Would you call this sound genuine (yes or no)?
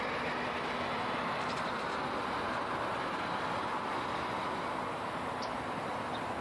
yes